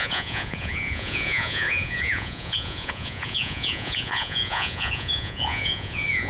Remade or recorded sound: remade